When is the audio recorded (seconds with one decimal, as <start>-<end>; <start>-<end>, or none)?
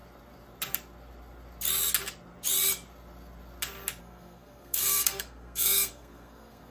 0.0-4.0